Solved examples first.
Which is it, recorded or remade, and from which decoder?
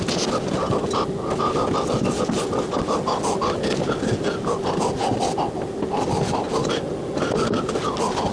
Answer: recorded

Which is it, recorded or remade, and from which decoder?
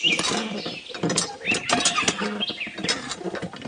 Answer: recorded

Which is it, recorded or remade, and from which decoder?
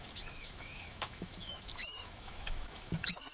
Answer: remade, autoencoder, DAC-VAE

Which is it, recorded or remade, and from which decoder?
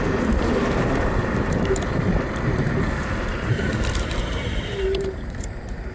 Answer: remade, vocoder, BigVGAN v2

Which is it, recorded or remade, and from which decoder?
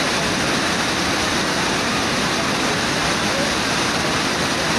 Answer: recorded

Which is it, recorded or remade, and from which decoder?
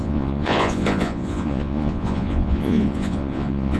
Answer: remade, vocoder, Vocos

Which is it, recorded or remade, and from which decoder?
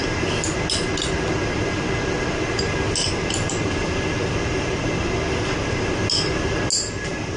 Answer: recorded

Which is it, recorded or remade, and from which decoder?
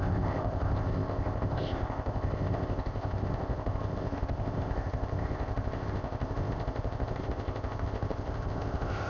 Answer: remade, codec, ZipCodec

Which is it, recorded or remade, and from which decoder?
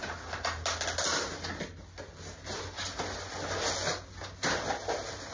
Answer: recorded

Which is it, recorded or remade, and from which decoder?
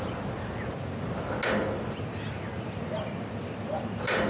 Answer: recorded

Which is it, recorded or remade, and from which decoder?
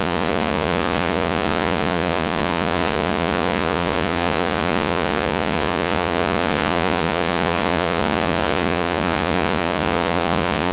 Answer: remade, vocoder, Vocos